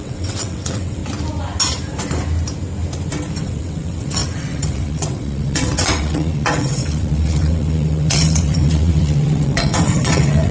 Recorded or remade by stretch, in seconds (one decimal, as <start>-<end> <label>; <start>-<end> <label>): 0.0-1.0 remade; 1.0-3.4 recorded; 3.4-10.5 remade